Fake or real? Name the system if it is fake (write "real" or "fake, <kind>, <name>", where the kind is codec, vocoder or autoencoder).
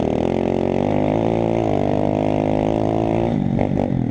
real